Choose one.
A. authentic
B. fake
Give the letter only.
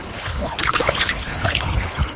B